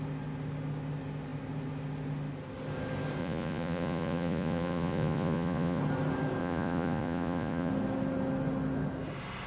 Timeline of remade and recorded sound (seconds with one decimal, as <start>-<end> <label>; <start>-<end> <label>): 0.0-3.2 recorded; 3.2-5.8 remade; 5.8-6.4 recorded; 6.4-7.7 remade; 7.7-9.5 recorded